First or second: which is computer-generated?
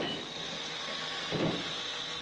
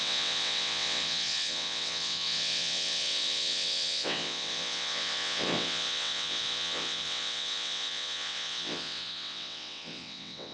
second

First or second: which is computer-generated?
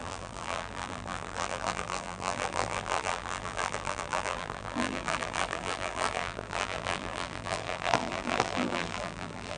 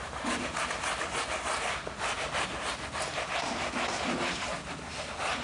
first